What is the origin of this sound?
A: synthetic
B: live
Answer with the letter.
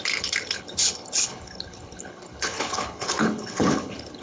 A